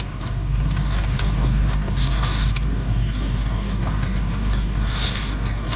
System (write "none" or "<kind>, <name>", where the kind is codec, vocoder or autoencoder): codec, DAC